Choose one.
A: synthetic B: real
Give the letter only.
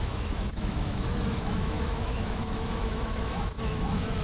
A